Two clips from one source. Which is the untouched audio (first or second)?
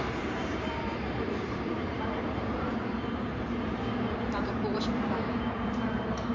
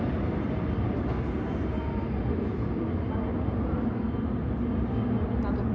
second